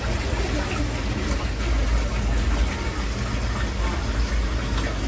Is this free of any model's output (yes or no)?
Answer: yes